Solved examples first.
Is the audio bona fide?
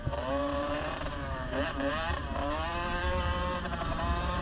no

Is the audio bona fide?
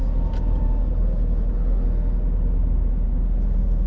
yes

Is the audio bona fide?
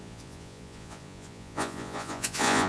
no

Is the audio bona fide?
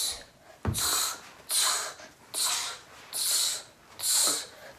yes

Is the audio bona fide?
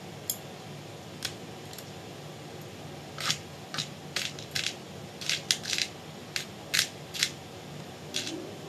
yes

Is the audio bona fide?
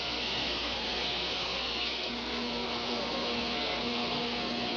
no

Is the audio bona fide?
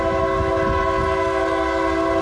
yes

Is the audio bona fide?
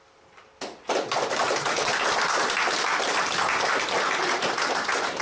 yes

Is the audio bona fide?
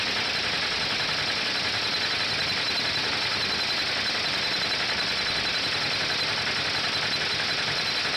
yes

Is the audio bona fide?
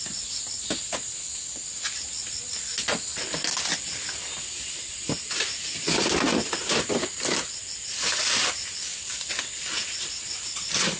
yes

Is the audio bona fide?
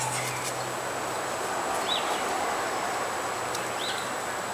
yes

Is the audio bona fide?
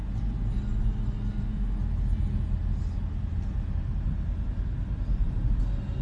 yes